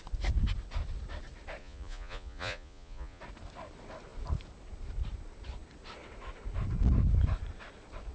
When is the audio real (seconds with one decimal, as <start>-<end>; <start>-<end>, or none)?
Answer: 0.0-1.6; 3.2-8.1